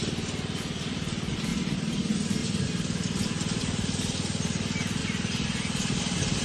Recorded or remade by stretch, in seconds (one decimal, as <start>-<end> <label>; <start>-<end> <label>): 0.0-6.4 recorded